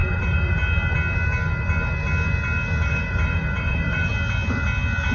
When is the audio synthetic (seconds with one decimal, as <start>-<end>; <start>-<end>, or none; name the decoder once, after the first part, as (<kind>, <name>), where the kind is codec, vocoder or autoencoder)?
0.0-0.5 (vocoder, BigVGAN v2); 2.8-4.1